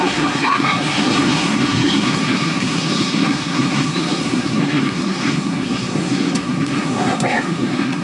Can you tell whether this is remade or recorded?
remade